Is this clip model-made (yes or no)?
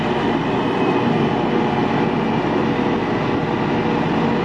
no